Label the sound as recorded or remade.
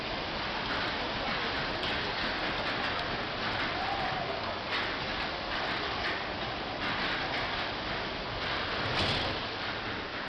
recorded